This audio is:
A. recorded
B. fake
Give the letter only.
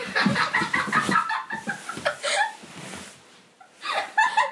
A